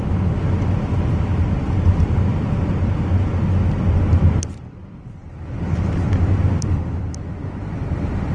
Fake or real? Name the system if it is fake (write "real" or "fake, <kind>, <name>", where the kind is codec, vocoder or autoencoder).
real